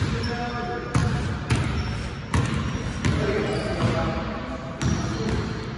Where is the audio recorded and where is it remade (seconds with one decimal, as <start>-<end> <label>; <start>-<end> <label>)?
0.0-5.8 recorded